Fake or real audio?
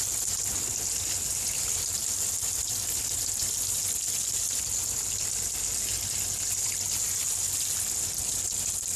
real